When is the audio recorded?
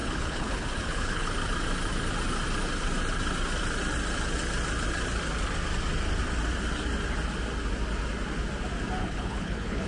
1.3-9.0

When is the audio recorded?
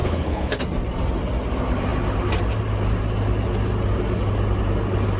0.6-5.2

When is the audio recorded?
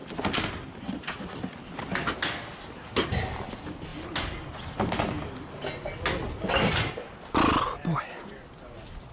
0.0-9.1